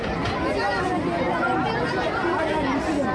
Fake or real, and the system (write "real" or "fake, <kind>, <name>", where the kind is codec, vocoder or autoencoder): real